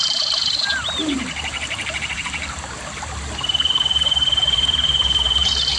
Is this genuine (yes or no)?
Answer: no